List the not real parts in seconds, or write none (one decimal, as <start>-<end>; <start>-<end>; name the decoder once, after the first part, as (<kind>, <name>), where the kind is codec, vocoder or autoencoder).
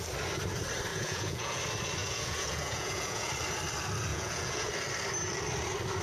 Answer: 0.9-1.6 (vocoder, Vocos); 2.0-3.3; 4.1-4.7